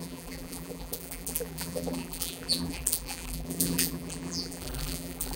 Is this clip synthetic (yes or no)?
yes